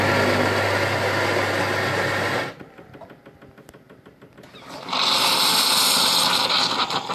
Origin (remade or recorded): recorded